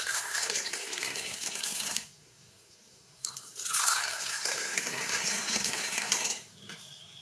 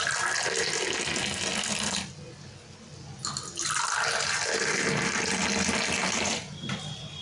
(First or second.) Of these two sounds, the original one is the second